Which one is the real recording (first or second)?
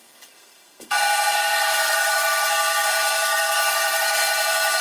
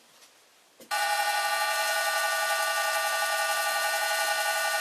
second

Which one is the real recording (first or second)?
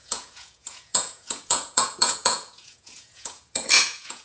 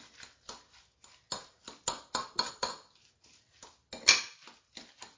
second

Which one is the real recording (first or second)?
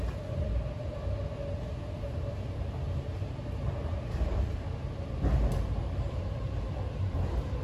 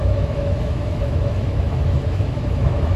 first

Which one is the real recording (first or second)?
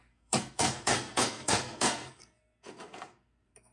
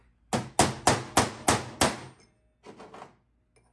second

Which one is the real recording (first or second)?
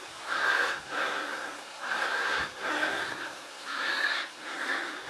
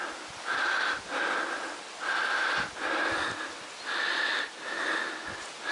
second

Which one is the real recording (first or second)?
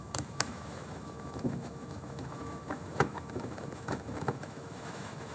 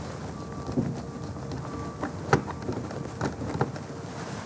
second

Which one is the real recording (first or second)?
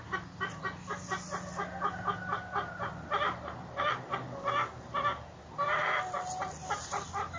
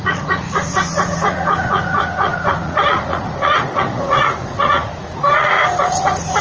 first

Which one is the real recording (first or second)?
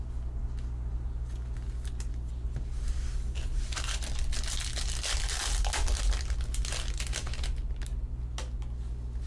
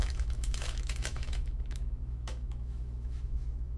first